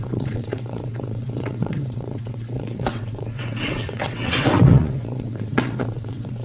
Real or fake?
fake